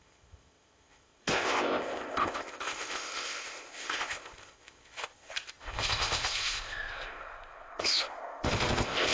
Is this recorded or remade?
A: remade